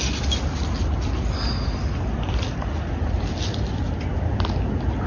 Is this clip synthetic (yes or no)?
no